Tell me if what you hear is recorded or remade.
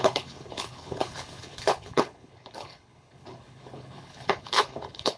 remade